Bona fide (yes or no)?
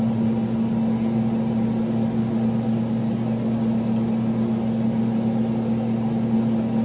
yes